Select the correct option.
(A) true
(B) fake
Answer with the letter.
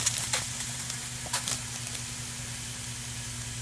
A